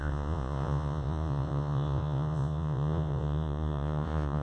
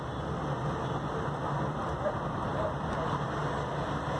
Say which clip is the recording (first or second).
second